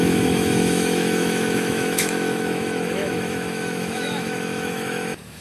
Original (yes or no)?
no